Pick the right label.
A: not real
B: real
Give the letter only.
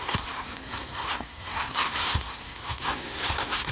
A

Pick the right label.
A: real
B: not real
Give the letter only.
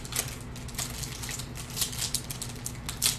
A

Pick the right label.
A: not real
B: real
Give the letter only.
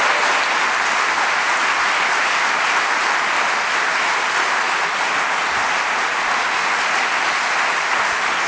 B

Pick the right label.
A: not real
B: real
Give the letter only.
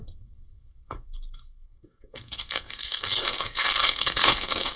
A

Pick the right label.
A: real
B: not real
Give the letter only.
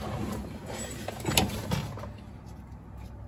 A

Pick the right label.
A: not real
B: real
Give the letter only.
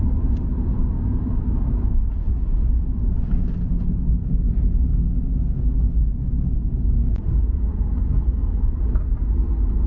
B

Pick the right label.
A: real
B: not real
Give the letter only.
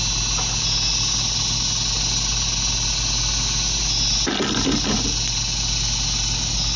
A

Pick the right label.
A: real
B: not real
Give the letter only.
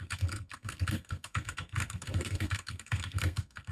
B